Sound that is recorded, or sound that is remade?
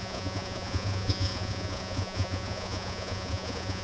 remade